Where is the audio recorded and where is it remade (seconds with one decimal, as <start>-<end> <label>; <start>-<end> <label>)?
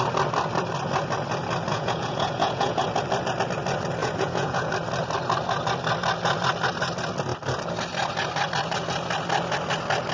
0.0-1.7 recorded; 1.7-2.8 remade; 2.8-4.0 recorded; 4.0-4.7 remade; 4.7-10.1 recorded